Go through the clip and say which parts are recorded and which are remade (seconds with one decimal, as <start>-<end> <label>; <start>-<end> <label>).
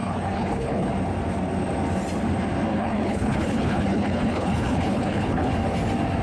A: 0.0-0.9 remade; 0.9-2.7 recorded; 2.7-5.5 remade; 5.5-6.2 recorded